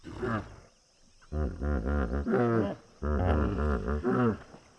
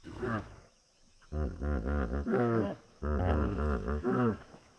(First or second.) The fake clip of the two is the second